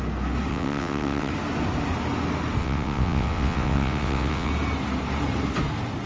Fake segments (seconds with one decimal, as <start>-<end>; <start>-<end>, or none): 0.5-1.3; 2.6-4.5